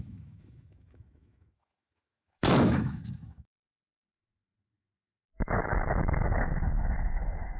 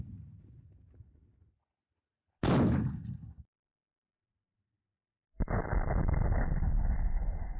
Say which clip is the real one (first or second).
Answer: second